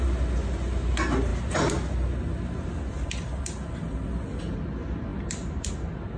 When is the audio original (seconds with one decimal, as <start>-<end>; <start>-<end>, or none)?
0.0-5.1; 5.7-6.2

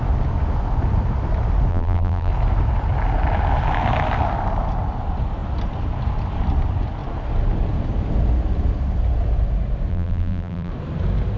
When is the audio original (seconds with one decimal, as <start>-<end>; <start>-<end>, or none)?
0.0-1.7; 2.3-9.9; 10.7-11.4

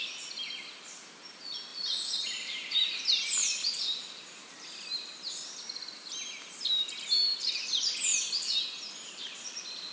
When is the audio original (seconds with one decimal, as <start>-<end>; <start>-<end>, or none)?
0.0-1.7; 3.0-3.4; 7.5-9.9

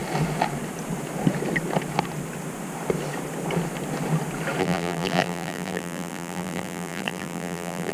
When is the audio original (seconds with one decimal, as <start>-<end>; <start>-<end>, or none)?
0.0-4.6

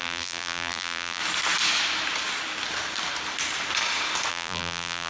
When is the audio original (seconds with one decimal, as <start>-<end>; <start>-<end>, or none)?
1.2-4.3

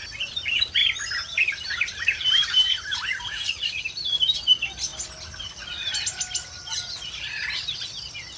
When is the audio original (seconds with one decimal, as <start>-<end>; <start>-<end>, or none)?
0.0-0.8; 3.8-8.4

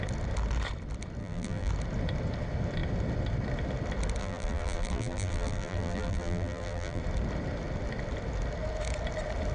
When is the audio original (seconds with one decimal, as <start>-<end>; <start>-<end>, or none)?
0.0-1.2; 1.7-4.2; 7.0-9.5

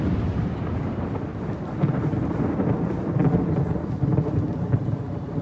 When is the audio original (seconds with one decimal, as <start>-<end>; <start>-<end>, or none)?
0.0-5.4